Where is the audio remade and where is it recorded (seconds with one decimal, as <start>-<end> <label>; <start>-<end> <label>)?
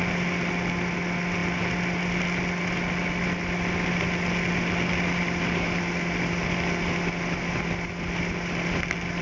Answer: 0.0-9.2 recorded